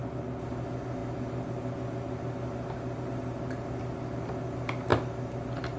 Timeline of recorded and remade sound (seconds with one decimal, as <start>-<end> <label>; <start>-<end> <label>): 0.0-5.8 recorded